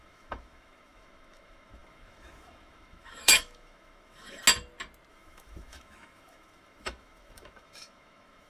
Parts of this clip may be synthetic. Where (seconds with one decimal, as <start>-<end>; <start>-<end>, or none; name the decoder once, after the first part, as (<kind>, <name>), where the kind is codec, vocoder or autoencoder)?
0.0-4.4 (autoencoder, DAC-VAE); 5.1-8.5